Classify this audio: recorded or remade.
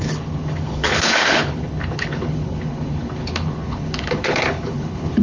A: remade